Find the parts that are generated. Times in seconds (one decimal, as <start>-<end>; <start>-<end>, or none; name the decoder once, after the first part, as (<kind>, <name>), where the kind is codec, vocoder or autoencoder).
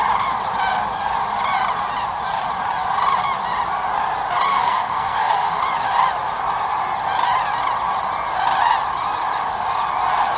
4.5-5.6 (codec, SNAC)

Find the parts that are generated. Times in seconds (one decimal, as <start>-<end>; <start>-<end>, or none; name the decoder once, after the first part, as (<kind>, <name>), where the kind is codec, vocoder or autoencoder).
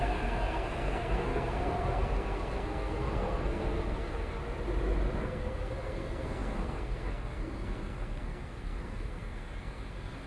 0.0-4.4 (codec, SNAC); 5.2-10.3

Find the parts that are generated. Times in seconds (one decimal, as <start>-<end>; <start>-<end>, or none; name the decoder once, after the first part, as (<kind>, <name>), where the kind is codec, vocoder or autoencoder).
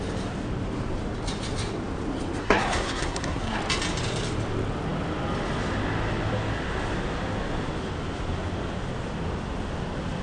2.4-3.6 (codec, SNAC)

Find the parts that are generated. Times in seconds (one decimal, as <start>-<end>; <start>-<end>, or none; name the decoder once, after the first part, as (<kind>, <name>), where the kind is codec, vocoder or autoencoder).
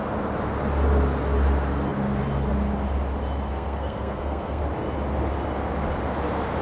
3.5-4.6 (codec, SNAC)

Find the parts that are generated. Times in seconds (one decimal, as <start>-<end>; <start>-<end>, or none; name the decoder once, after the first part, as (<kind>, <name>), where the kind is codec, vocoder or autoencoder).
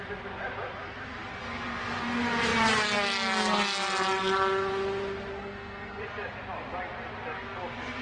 5.3-6.0 (codec, SNAC)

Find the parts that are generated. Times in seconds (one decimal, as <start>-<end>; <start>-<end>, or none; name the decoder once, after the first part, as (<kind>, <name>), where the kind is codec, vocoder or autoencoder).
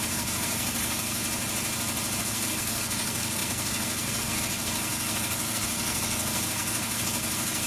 0.0-1.2 (codec, SNAC); 2.2-7.7